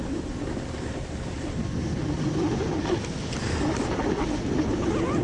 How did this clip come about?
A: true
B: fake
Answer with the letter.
A